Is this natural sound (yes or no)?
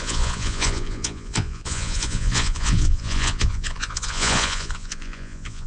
no